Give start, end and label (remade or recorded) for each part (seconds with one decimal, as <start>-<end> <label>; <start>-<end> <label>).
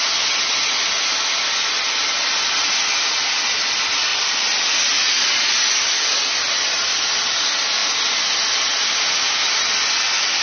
0.0-10.4 recorded